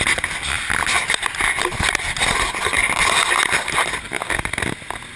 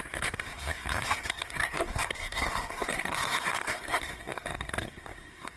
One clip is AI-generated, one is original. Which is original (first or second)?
first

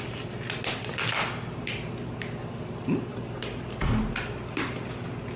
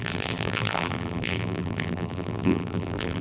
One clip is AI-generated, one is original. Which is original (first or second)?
first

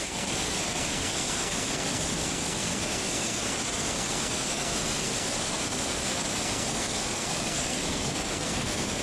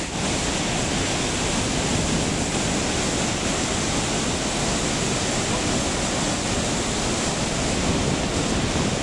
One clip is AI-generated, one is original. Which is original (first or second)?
second